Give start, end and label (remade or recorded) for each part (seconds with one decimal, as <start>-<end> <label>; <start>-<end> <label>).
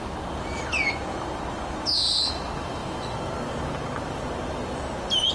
0.0-5.3 recorded